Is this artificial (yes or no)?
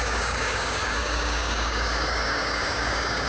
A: yes